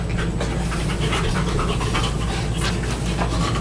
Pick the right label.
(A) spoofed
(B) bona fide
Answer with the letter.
B